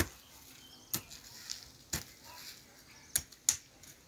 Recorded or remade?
recorded